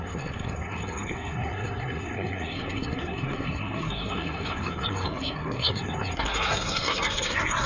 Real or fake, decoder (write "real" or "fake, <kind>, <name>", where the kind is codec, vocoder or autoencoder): fake, codec, SNAC